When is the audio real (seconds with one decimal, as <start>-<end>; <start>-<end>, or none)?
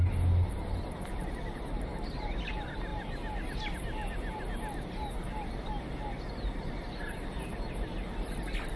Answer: 0.0-8.8